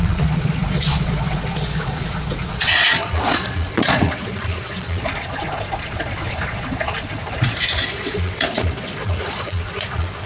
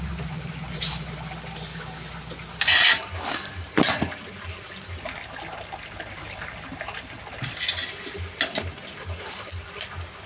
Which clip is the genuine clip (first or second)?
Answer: second